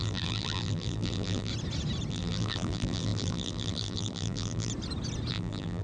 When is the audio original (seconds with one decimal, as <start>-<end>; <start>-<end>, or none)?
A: 1.5-2.1; 4.7-5.3